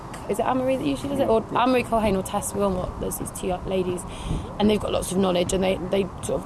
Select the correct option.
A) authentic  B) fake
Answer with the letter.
A